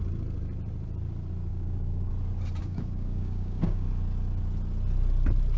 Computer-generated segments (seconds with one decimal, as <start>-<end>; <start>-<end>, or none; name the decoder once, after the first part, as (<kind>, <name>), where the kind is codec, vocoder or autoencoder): 1.5-2.1 (codec, DAC); 2.6-3.9

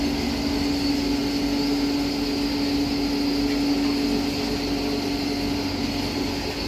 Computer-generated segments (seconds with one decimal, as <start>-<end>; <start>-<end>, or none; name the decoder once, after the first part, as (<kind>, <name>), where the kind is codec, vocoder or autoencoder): none

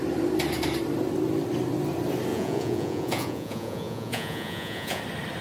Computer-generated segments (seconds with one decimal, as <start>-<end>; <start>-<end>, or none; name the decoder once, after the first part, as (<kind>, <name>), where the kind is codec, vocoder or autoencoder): 2.3-5.0 (vocoder, Vocos)